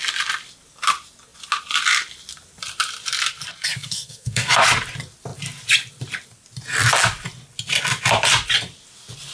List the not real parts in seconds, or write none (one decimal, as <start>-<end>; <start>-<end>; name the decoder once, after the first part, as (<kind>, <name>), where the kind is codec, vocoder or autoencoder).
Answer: 3.7-4.5 (codec, SNAC)